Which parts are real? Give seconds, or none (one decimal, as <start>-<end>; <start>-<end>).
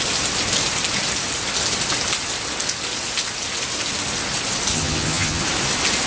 0.0-4.7; 5.4-6.1